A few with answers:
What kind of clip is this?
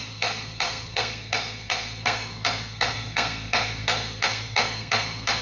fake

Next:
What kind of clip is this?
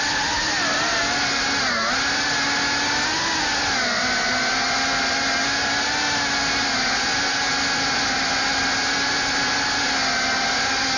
real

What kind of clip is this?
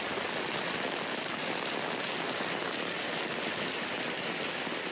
real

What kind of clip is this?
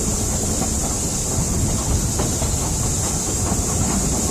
real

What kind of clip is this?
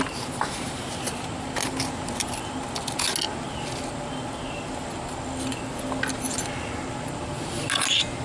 real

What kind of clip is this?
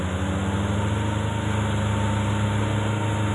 real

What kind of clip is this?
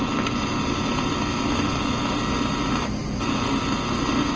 real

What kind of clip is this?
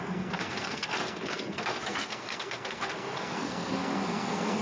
fake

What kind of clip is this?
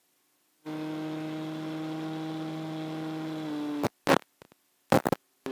real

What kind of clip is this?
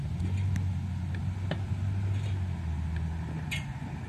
real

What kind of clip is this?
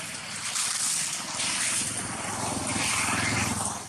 real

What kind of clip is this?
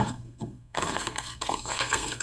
fake